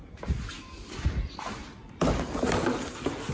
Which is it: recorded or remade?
recorded